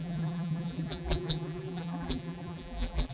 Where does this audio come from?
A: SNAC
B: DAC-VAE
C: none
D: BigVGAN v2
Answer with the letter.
D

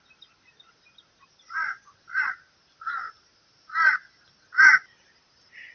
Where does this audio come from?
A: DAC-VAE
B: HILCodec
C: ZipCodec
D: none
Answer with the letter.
D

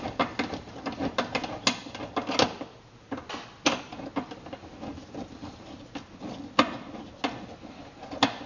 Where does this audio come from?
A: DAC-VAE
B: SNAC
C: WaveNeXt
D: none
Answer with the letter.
D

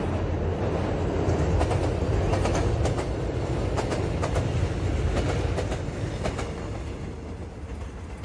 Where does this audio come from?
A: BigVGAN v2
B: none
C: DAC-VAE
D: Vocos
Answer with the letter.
B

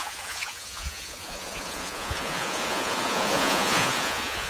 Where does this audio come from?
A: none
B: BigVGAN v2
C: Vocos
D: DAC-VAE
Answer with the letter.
C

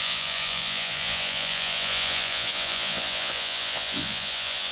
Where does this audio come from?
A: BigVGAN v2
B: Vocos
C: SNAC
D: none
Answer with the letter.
B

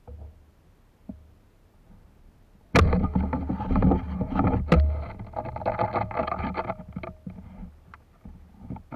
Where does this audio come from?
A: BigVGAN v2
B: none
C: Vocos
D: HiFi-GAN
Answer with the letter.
B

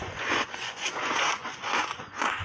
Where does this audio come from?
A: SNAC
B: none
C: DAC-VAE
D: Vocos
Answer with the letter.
D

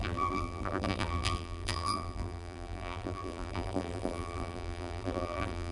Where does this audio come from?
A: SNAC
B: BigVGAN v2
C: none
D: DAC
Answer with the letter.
B